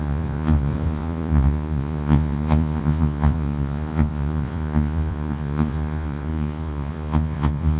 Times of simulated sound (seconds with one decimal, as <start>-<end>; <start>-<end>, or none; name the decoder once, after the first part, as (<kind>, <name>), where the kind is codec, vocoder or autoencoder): 0.0-7.8 (vocoder, Vocos)